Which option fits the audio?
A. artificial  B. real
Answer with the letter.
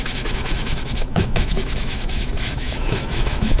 A